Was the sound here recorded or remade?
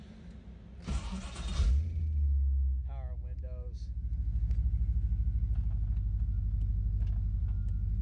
recorded